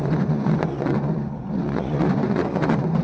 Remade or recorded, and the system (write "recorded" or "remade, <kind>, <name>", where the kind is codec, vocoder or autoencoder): remade, vocoder, Vocos